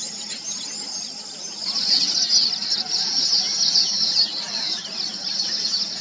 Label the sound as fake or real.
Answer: real